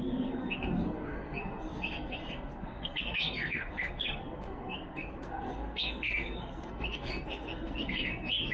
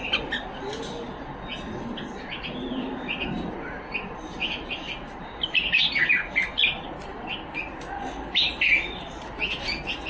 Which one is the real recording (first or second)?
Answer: second